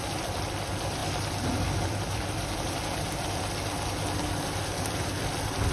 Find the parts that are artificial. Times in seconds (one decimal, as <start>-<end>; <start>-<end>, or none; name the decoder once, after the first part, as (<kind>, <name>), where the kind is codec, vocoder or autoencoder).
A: none